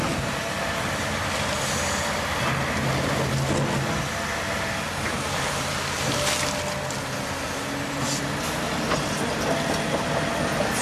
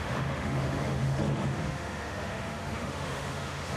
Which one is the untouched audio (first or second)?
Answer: first